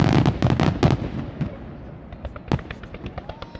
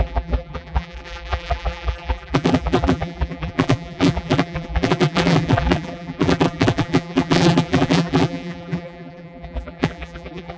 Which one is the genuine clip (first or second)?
first